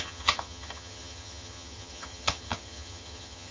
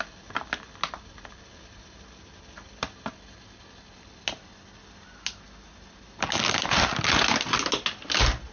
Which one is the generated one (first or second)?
first